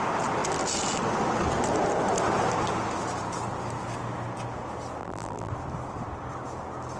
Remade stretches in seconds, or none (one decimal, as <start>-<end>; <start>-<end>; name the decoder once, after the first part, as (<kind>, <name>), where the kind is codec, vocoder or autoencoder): 5.0-5.5 (vocoder, BigVGAN v2)